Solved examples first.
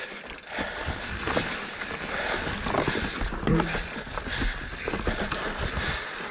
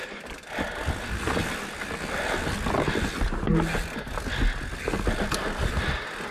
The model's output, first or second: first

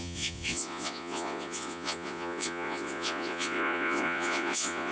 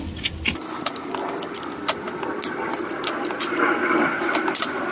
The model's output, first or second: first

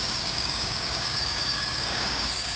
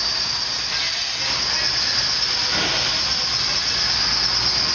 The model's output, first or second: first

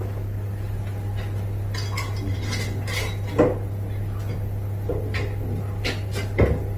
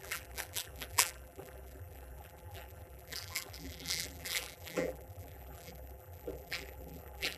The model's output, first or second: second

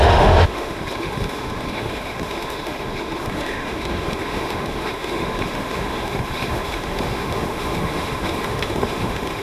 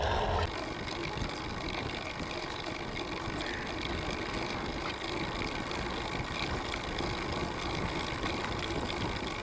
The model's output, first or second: first